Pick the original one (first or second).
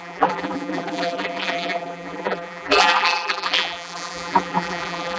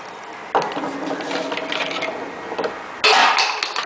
second